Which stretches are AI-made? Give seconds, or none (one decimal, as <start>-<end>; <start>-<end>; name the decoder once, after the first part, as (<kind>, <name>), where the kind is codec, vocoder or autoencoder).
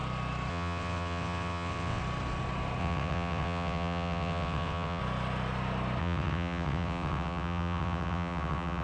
0.5-2.0 (vocoder, WaveNeXt); 2.8-5.0; 6.0-8.8